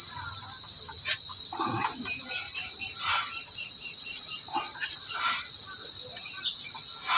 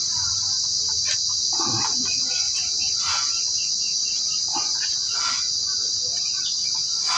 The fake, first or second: first